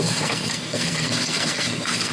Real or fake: fake